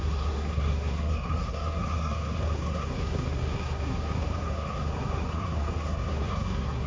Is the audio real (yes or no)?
no